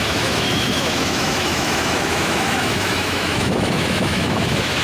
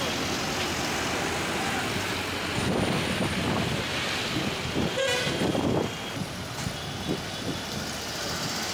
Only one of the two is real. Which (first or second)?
second